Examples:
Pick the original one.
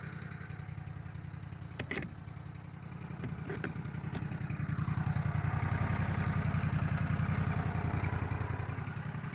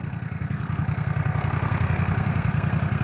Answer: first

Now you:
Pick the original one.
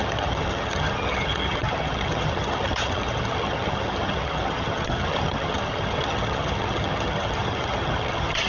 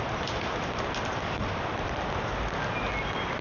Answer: second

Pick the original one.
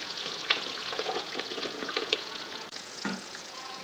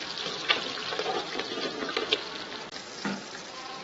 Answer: second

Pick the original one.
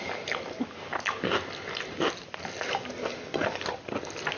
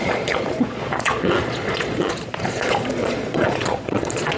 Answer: first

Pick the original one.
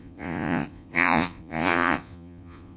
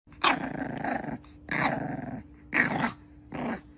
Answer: second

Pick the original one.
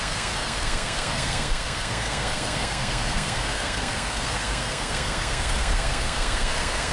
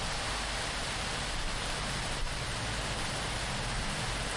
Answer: second